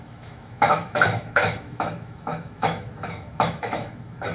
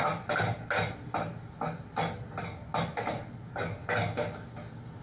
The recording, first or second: second